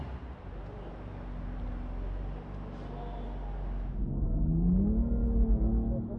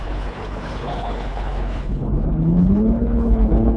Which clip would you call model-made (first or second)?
second